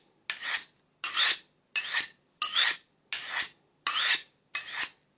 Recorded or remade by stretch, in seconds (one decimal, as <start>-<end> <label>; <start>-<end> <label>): 0.0-5.2 recorded